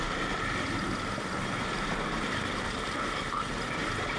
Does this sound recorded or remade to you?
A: remade